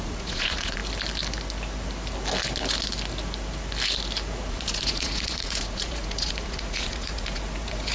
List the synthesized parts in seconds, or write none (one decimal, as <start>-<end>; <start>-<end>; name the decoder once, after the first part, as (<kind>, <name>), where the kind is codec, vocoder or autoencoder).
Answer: 0.0-0.8 (vocoder, Vocos); 4.5-7.9